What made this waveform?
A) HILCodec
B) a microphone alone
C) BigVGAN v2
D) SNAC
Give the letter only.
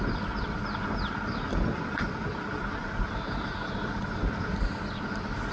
B